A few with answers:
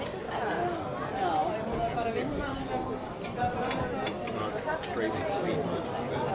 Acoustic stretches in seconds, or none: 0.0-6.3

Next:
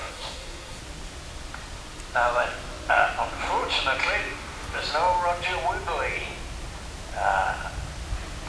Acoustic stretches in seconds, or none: 0.8-8.5